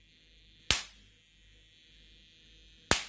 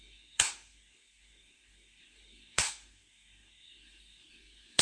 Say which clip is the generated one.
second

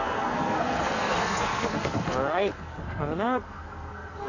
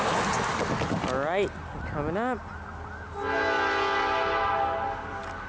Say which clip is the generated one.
first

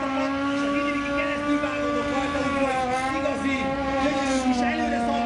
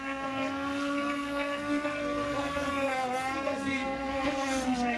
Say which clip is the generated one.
second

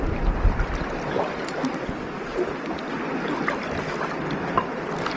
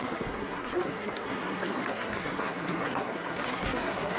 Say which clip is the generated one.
second